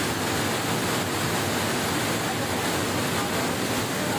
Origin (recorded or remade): recorded